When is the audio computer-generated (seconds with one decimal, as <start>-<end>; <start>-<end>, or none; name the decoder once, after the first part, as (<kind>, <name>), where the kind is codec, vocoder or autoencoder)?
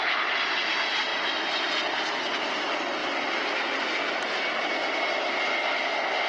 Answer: none